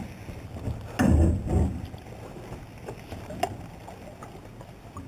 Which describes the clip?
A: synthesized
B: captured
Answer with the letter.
B